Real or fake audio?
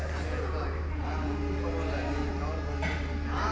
real